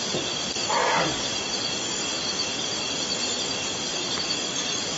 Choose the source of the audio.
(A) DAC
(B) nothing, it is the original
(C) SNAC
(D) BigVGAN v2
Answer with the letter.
B